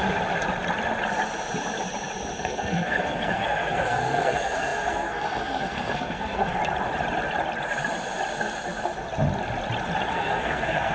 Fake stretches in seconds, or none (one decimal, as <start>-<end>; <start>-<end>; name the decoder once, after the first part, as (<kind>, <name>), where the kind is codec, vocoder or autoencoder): 2.4-6.6 (codec, SNAC); 10.1-10.9